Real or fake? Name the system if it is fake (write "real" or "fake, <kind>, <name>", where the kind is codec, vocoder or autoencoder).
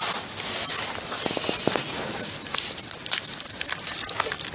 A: real